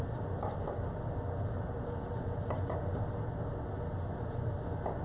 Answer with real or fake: real